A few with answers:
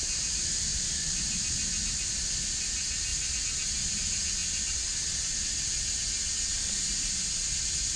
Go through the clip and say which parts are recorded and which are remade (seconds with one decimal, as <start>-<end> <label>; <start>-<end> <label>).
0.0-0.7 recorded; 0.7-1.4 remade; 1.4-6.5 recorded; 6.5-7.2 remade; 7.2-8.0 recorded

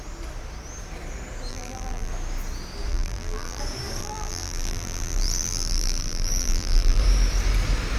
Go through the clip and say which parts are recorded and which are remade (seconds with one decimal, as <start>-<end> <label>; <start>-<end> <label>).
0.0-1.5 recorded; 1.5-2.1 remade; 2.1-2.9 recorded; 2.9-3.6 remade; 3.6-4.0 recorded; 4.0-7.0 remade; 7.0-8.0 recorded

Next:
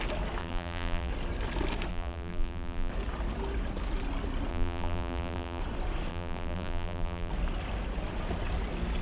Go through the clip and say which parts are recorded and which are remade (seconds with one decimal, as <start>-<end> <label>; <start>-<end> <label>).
0.0-0.4 recorded; 0.4-1.1 remade; 1.1-1.9 recorded; 1.9-2.9 remade; 2.9-4.5 recorded; 4.5-5.6 remade; 5.6-6.1 recorded; 6.1-7.3 remade; 7.3-9.0 recorded

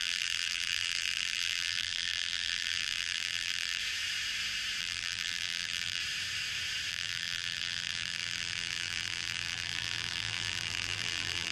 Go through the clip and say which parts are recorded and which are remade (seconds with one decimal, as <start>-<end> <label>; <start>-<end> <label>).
0.0-3.8 remade; 3.8-4.8 recorded; 4.8-6.0 remade; 6.0-6.9 recorded; 6.9-11.5 remade

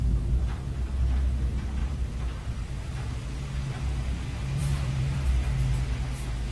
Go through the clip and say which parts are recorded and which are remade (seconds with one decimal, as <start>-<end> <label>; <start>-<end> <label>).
0.0-1.8 recorded; 1.8-2.9 remade; 2.9-4.6 recorded; 4.6-5.3 remade; 5.3-6.5 recorded

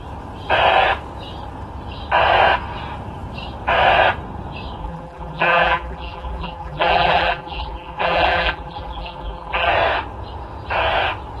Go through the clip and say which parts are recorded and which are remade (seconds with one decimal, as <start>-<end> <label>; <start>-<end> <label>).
0.0-4.8 recorded; 4.8-9.7 remade; 9.7-11.4 recorded

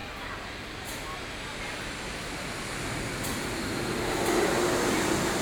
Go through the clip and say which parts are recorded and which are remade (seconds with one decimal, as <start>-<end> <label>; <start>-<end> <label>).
0.0-5.4 recorded